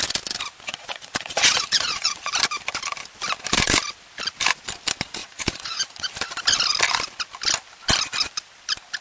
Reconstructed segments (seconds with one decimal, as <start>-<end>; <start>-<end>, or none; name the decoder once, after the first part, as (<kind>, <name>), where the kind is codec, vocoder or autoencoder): 0.7-2.3 (vocoder, Vocos); 5.2-6.1